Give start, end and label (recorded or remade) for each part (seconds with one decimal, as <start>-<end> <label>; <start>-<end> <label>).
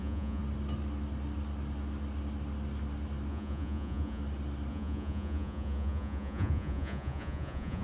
0.0-0.4 remade; 0.4-3.3 recorded; 3.3-4.2 remade; 4.2-4.7 recorded; 4.7-7.8 remade